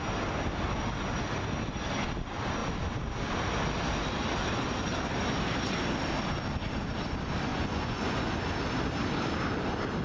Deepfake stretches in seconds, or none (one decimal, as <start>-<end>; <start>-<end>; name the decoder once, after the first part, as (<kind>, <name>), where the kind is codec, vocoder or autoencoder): 7.5-8.3 (vocoder, Vocos)